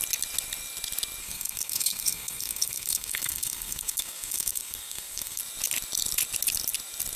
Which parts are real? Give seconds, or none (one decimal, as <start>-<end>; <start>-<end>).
0.0-1.2; 5.4-7.2